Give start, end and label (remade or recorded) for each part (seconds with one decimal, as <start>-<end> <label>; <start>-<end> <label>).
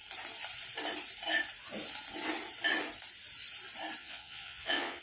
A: 0.0-4.0 recorded; 4.0-5.0 remade